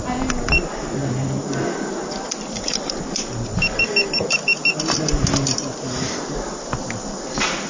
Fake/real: real